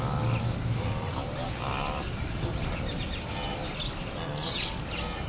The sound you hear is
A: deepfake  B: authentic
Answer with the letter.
B